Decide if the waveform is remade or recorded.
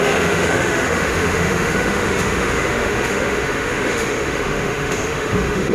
remade